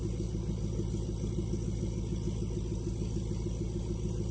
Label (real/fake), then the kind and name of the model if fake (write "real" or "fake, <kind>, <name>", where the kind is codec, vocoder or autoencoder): real